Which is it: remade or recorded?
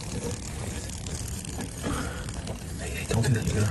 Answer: remade